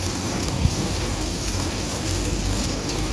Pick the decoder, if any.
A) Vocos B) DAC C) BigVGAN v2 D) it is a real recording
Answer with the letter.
B